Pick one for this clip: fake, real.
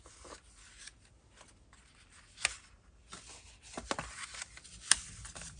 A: real